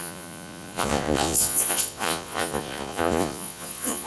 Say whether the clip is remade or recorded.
remade